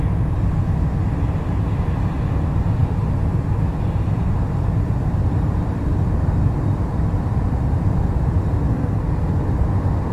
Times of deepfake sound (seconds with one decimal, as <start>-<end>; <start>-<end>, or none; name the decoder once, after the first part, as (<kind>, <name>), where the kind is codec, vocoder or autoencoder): 8.7-9.4 (codec, SNAC)